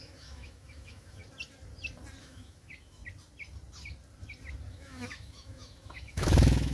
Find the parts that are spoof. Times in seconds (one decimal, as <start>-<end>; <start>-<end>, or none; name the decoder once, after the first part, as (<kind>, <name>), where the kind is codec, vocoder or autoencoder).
0.0-1.2 (autoencoder, DAC-VAE); 2.2-3.0; 4.7-6.7

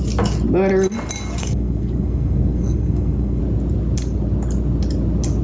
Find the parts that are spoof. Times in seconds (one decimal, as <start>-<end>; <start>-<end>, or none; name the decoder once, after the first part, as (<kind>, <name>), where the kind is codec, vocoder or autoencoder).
1.4-3.4 (codec, SNAC)

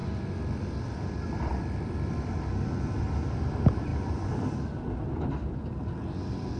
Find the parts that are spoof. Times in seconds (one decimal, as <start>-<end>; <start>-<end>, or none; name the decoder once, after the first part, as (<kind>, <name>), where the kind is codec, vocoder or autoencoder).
0.6-6.6 (vocoder, BigVGAN v2)

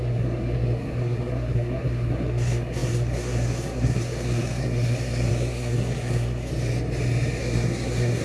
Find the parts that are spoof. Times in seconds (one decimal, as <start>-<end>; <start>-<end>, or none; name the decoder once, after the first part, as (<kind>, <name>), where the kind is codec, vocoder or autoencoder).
0.0-6.5 (codec, SNAC); 7.4-8.2

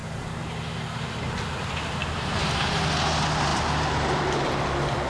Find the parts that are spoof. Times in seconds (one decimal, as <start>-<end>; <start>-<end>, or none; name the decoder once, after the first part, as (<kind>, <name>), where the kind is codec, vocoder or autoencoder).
2.0-2.9 (vocoder, BigVGAN v2); 3.5-5.1

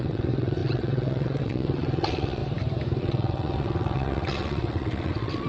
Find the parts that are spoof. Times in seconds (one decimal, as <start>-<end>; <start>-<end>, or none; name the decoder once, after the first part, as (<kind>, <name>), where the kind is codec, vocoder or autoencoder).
0.0-2.4 (vocoder, WaveNeXt); 3.0-5.5